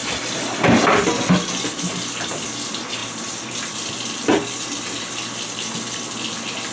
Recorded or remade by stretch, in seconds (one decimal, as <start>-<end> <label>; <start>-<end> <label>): 0.0-0.8 remade; 0.8-3.0 recorded; 3.0-5.0 remade; 5.0-6.7 recorded